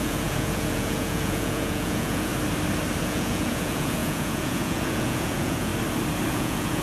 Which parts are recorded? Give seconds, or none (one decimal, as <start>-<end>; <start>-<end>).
2.3-3.0; 5.7-6.3